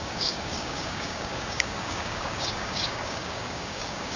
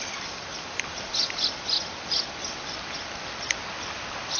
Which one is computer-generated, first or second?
first